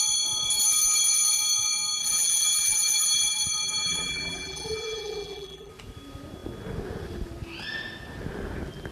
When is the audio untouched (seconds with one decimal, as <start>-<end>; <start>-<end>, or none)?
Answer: 0.0-2.0; 5.7-8.9